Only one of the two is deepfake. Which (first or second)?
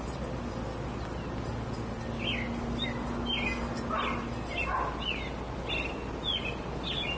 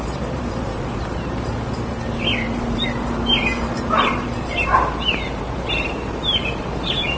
second